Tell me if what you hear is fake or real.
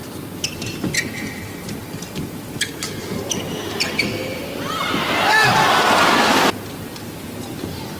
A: real